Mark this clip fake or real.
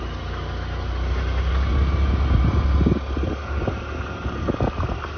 real